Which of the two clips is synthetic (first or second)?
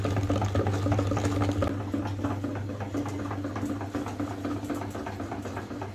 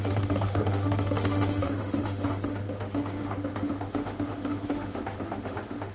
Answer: second